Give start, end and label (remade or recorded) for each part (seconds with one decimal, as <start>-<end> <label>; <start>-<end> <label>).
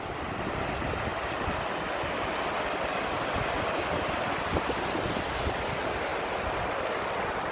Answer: 0.0-7.5 recorded